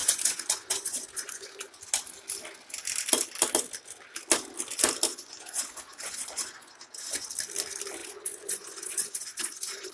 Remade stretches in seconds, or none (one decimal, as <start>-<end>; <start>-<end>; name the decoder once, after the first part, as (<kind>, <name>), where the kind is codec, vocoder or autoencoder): 0.0-1.8 (vocoder, Vocos); 5.1-7.3; 8.0-9.9

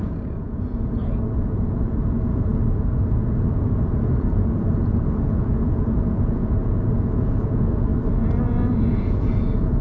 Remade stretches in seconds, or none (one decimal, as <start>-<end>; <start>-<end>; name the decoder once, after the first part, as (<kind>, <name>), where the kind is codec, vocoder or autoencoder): 0.0-7.9 (vocoder, Vocos); 8.4-9.8

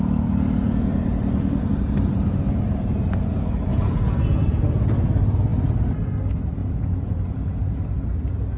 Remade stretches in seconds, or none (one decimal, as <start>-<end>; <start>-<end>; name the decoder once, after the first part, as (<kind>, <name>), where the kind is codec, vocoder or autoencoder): 3.7-4.6 (vocoder, Vocos); 6.6-7.6

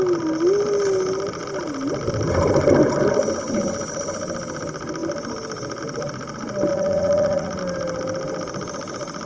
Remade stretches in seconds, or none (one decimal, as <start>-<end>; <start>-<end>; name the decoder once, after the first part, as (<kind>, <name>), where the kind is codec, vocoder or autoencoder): 6.7-7.6 (vocoder, Vocos)

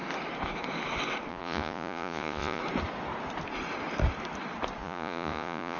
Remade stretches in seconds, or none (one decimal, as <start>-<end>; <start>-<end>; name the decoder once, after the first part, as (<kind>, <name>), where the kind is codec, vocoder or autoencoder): 1.3-2.6 (vocoder, Vocos); 4.8-5.8

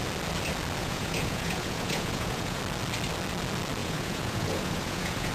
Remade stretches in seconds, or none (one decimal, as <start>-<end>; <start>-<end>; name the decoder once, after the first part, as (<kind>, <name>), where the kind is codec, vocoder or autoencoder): 0.8-2.6 (vocoder, Vocos); 3.8-5.3